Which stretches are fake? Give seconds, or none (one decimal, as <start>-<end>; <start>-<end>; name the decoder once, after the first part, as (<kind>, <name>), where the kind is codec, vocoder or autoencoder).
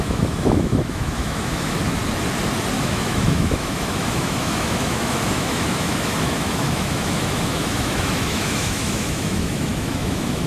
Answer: 0.0-2.0 (autoencoder, DAC-VAE); 2.8-10.5